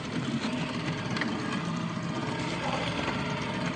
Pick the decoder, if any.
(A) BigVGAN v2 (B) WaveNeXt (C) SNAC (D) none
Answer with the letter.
D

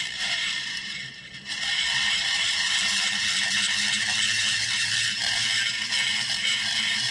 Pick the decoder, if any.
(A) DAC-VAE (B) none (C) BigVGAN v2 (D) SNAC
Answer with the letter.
C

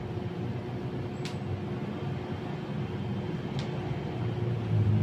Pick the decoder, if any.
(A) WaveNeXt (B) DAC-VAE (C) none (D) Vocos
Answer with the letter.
C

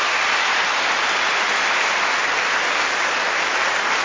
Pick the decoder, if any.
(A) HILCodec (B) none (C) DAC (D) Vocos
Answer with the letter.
B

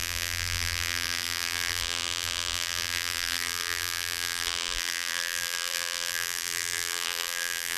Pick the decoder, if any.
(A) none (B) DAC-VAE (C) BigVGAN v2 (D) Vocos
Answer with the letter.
C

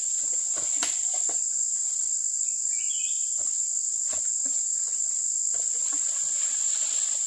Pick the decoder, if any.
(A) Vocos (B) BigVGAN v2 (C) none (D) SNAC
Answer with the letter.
B